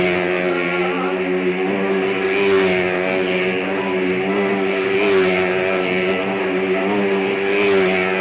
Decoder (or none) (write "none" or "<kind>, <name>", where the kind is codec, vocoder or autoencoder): none